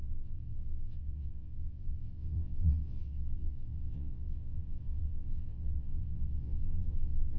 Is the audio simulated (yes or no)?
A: yes